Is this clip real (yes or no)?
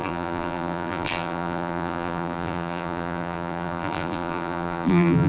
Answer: no